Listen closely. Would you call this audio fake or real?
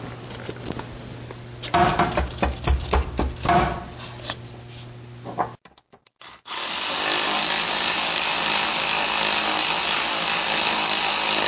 real